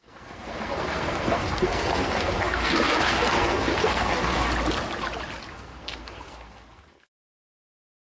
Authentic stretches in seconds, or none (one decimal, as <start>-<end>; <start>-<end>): 4.5-5.5